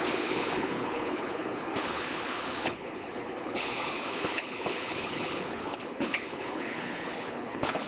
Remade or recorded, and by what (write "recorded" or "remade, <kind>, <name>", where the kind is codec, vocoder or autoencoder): remade, codec, HILCodec